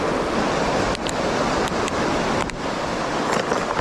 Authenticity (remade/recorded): recorded